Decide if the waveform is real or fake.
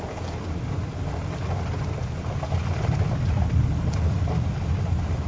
real